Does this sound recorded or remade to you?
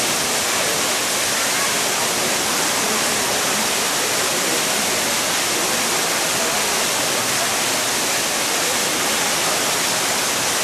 recorded